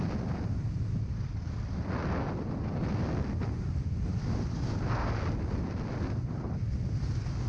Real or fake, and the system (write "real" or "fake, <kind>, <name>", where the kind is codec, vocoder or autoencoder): real